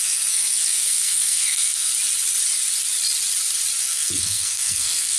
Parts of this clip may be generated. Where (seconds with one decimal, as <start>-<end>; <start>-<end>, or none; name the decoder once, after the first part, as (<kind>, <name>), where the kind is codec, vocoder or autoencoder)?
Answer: 0.0-1.9 (codec, SNAC); 3.8-5.2

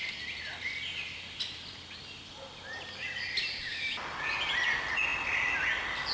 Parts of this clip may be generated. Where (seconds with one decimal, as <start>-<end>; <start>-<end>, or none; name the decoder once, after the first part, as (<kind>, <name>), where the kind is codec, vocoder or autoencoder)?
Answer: none

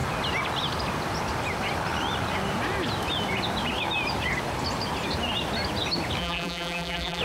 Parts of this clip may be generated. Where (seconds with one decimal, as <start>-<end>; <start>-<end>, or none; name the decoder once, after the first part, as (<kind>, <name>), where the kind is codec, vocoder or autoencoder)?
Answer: 6.2-7.2 (vocoder, BigVGAN v2)